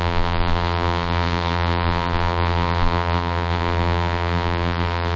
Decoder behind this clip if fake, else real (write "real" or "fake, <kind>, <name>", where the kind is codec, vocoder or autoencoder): fake, vocoder, BigVGAN v2